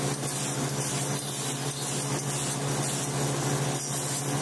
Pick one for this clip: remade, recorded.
recorded